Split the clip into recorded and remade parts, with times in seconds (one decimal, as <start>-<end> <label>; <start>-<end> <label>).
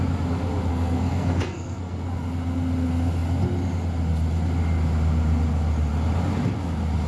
0.0-0.7 recorded; 0.7-2.1 remade; 2.1-7.1 recorded